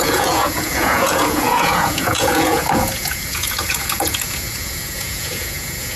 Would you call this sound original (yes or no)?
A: no